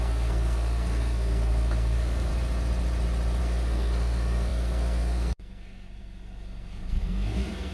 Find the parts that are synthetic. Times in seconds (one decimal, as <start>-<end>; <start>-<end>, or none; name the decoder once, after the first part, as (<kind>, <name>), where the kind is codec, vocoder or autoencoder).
0.0-2.3 (codec, SNAC); 3.4-7.7